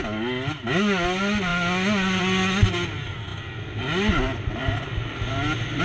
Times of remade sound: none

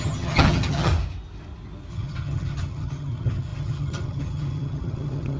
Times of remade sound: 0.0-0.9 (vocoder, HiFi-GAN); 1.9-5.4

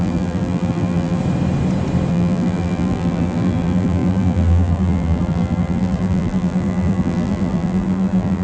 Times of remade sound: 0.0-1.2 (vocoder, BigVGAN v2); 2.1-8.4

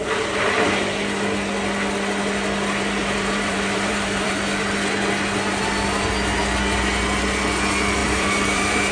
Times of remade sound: 3.0-4.3 (vocoder, BigVGAN v2); 8.0-8.9

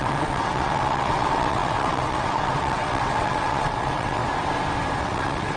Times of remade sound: 0.0-4.2 (vocoder, WaveNeXt); 5.0-5.6

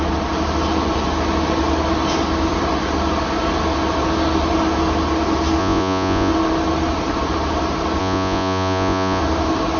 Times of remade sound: 5.6-6.3 (vocoder, Vocos); 8.0-9.2

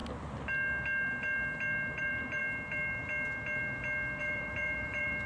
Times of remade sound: 2.0-2.4 (vocoder, BigVGAN v2); 4.2-5.3